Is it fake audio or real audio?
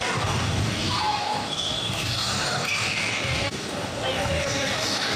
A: fake